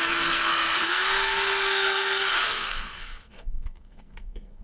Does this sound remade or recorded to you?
remade